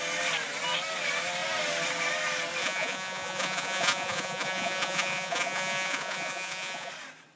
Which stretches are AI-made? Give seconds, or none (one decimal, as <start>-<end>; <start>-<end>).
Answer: 2.6-6.9